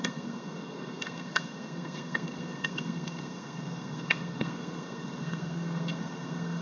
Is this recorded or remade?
remade